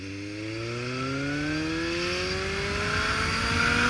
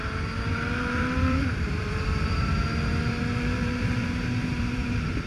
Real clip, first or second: first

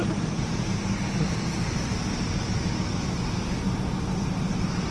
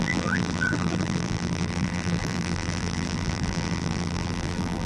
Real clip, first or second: first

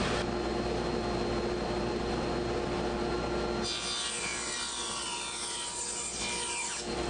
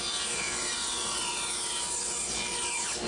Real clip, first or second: first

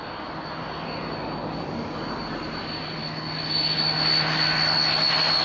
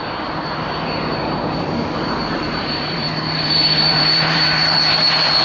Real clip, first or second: first